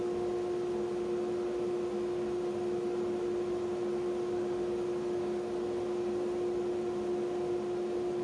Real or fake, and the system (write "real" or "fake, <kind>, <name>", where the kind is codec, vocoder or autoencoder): real